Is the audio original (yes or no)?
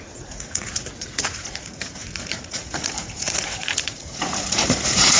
no